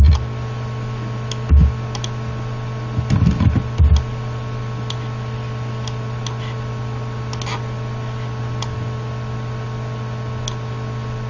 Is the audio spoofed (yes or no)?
no